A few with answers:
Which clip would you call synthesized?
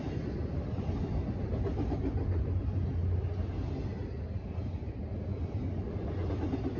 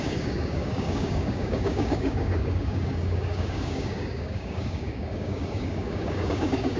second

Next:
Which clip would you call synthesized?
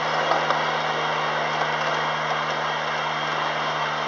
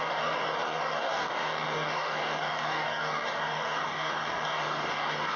second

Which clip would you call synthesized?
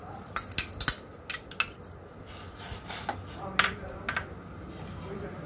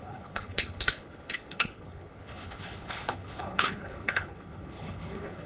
second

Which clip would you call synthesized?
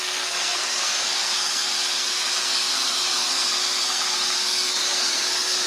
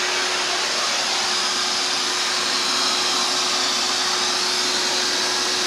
first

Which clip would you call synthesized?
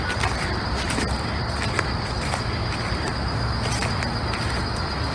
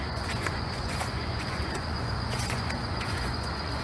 second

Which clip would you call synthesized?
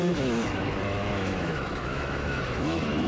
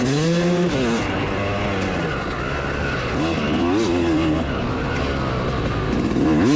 first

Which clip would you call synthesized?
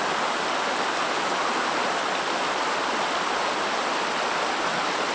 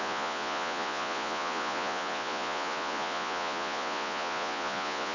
second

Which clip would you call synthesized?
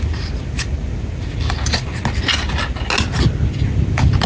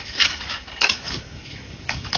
second